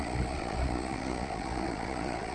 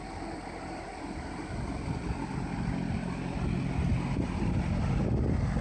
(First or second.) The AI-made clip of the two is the first